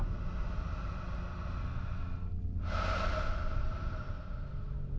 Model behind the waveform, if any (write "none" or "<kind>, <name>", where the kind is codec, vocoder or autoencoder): none